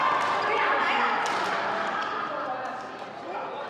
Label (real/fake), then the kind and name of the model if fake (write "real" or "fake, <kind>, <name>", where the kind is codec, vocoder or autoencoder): real